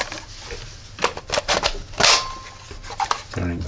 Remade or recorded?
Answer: recorded